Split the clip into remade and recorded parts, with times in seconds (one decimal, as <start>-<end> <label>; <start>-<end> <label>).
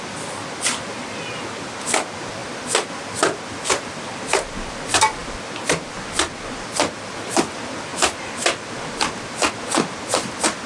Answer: 0.0-10.7 recorded